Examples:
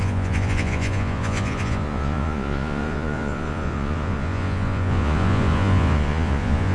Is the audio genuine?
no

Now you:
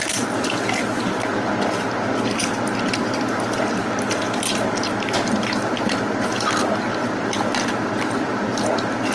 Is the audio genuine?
yes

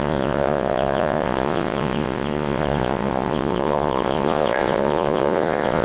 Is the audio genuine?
no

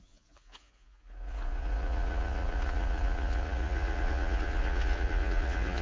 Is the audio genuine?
no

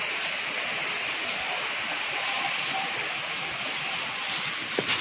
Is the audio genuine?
yes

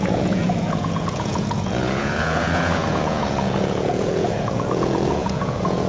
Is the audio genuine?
no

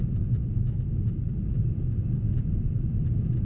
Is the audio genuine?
yes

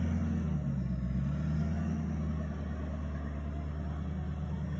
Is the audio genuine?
yes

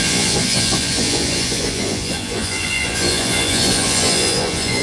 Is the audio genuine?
no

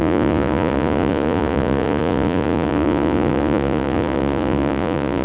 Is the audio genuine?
no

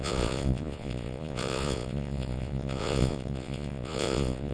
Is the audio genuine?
no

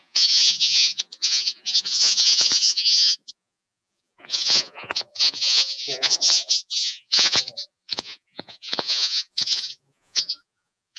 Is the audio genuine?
no